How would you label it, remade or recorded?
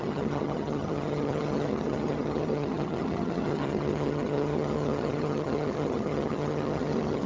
remade